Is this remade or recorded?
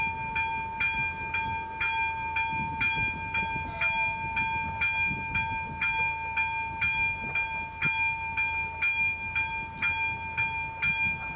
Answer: recorded